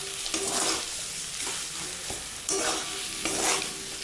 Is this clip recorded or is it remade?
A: recorded